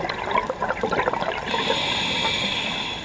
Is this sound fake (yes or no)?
no